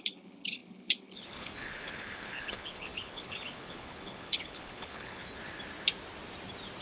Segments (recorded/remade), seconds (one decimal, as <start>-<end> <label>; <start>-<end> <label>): 0.0-5.4 remade; 5.4-6.8 recorded